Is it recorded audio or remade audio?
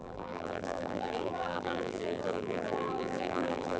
remade